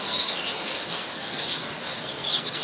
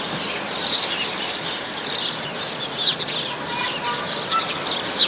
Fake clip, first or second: first